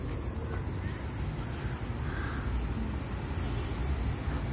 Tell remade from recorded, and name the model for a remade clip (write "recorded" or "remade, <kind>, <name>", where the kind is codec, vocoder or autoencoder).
recorded